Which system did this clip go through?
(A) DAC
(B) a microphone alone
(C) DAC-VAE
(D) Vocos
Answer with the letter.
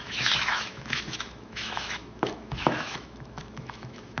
C